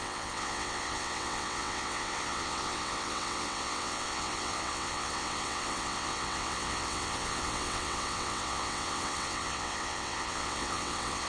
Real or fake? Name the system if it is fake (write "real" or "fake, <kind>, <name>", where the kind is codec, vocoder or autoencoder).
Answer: fake, vocoder, WaveNeXt